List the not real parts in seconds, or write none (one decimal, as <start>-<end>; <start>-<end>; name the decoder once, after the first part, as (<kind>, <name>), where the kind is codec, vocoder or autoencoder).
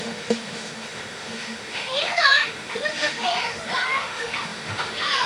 0.0-5.3 (autoencoder, DAC-VAE)